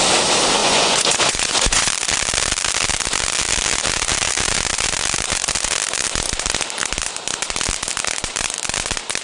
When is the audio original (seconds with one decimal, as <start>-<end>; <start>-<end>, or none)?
0.0-0.6; 1.9-9.2